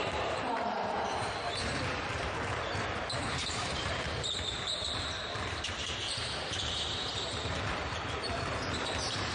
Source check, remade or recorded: remade